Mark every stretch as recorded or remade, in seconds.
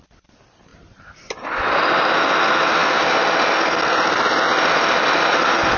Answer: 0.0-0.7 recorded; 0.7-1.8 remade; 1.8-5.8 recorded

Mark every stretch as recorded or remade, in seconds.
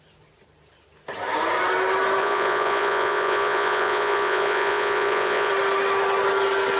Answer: 0.0-2.2 recorded; 2.2-5.5 remade; 5.5-6.8 recorded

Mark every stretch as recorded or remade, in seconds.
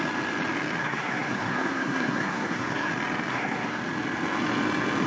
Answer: 0.0-0.8 recorded; 0.8-2.9 remade; 2.9-3.3 recorded; 3.3-3.8 remade; 3.8-5.1 recorded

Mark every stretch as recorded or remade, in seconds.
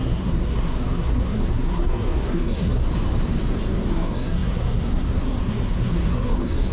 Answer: 0.0-2.8 remade; 2.8-3.9 recorded; 3.9-6.7 remade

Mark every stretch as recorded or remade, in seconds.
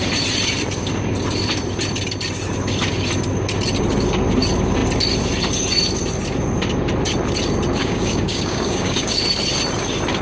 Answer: 0.0-7.8 recorded; 7.8-9.2 remade; 9.2-10.2 recorded